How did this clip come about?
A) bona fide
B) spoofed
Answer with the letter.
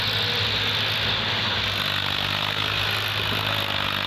A